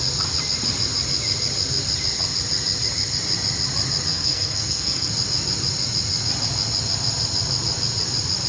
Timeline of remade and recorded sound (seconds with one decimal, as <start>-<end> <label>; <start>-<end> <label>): 0.0-4.1 recorded; 4.1-5.1 remade; 5.1-8.5 recorded